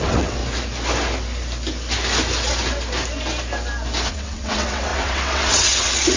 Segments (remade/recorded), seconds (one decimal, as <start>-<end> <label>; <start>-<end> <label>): 0.0-0.4 remade; 0.4-4.1 recorded; 4.1-6.2 remade